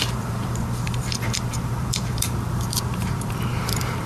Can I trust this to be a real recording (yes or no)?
no